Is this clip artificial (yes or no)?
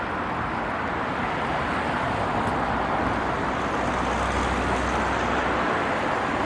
no